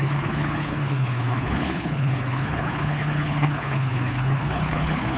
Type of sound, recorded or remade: remade